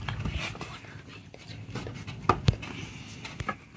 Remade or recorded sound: recorded